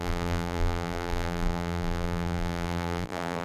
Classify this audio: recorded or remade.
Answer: remade